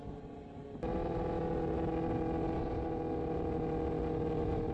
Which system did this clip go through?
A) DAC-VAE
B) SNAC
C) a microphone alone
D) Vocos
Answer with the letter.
C